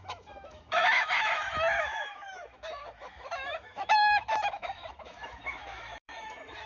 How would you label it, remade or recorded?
remade